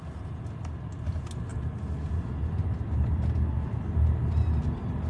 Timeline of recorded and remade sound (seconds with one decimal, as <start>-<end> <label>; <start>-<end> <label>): 0.0-5.1 recorded